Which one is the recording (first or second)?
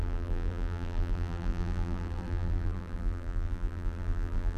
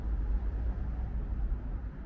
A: second